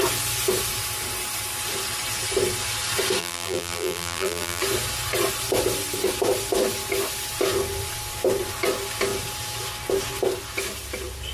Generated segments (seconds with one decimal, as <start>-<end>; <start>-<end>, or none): 3.2-4.6